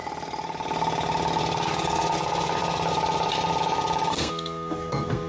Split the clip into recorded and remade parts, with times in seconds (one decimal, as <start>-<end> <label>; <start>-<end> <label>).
0.0-4.1 recorded; 4.1-5.3 remade